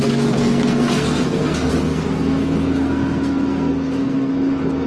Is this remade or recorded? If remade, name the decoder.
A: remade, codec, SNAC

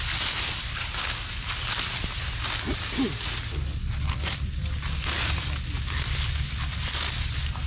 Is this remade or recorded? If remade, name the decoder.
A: recorded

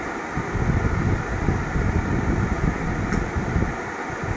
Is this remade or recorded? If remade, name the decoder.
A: recorded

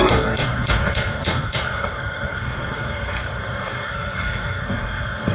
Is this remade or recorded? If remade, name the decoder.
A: remade, codec, SNAC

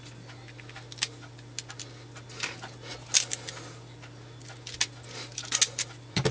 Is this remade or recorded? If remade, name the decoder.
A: recorded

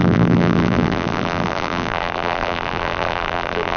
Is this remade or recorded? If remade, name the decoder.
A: remade, vocoder, BigVGAN v2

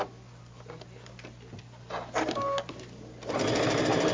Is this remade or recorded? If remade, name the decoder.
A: recorded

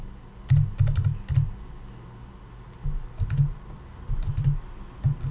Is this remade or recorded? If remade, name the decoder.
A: recorded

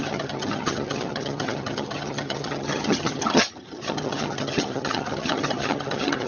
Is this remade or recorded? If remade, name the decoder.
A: remade, vocoder, HiFi-GAN